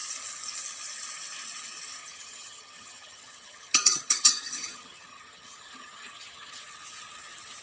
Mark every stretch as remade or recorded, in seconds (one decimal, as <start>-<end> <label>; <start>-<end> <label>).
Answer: 0.0-2.0 recorded; 2.0-6.6 remade; 6.6-7.6 recorded

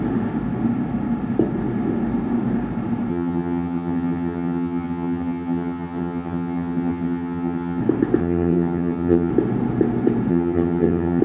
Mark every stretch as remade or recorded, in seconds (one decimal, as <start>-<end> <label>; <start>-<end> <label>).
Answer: 0.0-3.1 recorded; 3.1-7.8 remade; 7.8-8.2 recorded; 8.2-9.3 remade; 9.3-10.3 recorded; 10.3-11.2 remade

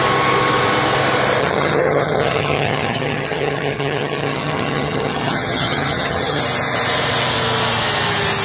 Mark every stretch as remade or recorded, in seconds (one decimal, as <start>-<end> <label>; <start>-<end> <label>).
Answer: 0.0-1.4 recorded; 1.4-6.4 remade; 6.4-8.4 recorded